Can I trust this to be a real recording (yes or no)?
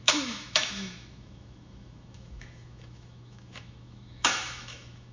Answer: no